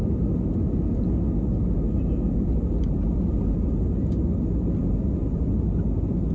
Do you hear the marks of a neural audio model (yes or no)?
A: no